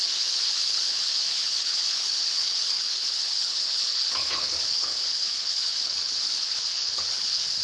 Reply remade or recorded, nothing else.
remade